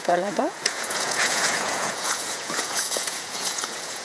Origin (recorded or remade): remade